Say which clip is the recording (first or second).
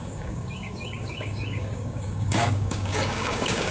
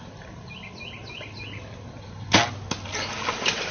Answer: second